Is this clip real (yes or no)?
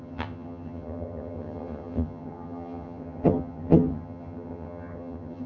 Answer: no